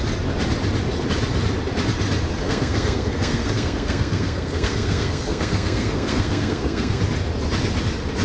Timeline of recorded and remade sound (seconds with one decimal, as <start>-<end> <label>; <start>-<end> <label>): 0.0-2.4 recorded; 2.4-7.0 remade; 7.0-8.2 recorded